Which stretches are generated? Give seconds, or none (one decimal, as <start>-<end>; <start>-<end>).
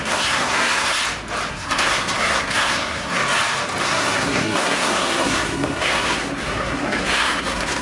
0.0-1.0; 1.5-3.2; 3.8-7.8